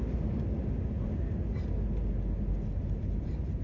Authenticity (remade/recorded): recorded